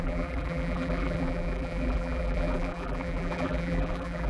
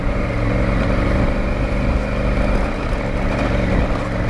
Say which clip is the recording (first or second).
second